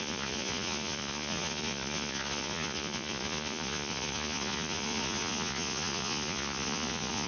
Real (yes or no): no